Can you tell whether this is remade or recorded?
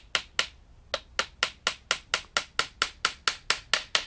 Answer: recorded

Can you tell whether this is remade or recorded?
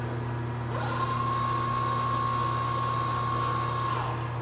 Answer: recorded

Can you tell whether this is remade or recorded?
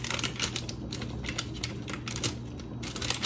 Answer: recorded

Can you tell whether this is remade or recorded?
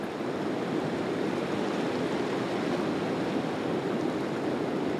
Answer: recorded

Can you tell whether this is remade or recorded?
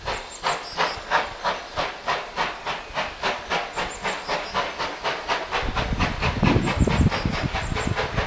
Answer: recorded